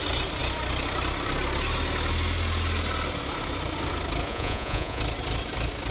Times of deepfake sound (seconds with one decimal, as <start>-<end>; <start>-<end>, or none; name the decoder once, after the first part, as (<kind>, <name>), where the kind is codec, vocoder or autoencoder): 4.3-5.0 (vocoder, Vocos)

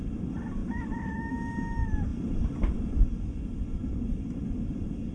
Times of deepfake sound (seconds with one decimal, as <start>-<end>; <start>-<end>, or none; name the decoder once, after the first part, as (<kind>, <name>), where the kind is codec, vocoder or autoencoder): none

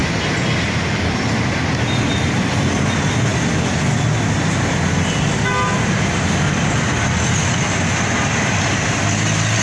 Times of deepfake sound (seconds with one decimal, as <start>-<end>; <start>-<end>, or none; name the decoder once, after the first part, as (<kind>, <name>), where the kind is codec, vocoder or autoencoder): none

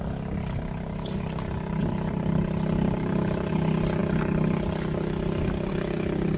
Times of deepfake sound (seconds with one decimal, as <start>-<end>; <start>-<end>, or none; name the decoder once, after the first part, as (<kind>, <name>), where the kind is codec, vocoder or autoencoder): 1.8-3.5 (vocoder, BigVGAN v2)

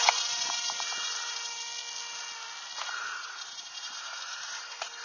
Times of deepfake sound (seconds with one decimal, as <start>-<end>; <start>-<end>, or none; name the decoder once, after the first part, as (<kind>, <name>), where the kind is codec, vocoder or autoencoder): 0.0-1.7 (vocoder, BigVGAN v2); 2.9-5.0

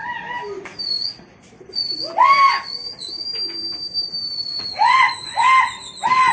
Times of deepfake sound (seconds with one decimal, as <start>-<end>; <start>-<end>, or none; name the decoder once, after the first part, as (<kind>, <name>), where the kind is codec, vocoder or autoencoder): none

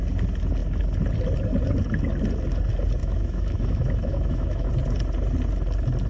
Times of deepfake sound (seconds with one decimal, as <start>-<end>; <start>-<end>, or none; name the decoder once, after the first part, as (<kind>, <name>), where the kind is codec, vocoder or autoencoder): 3.0-4.7 (autoencoder, DAC-VAE)